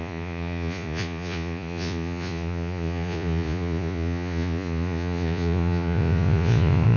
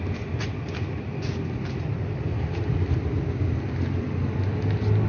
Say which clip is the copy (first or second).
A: first